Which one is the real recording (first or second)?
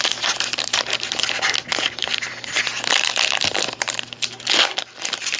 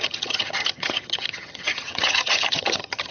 first